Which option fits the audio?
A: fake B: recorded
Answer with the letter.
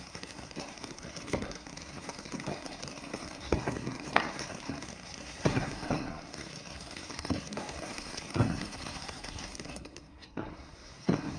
A